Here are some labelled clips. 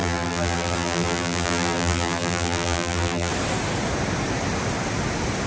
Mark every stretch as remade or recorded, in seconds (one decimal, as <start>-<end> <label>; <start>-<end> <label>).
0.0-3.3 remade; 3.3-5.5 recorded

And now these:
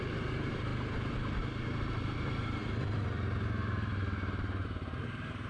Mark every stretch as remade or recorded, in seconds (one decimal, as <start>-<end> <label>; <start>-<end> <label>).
0.0-0.7 remade; 0.7-1.3 recorded; 1.3-5.5 remade

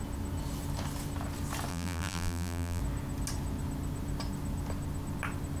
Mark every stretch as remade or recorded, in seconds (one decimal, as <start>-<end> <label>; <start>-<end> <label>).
0.0-1.7 recorded; 1.7-2.8 remade; 2.8-5.6 recorded

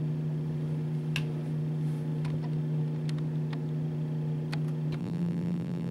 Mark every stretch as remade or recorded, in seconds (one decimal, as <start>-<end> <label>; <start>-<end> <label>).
0.0-5.0 recorded; 5.0-5.9 remade